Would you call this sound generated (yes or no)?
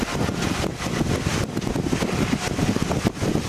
no